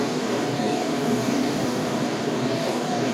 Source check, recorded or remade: remade